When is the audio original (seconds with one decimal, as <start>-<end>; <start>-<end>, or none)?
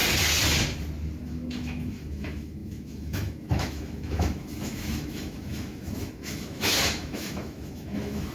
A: 0.0-1.2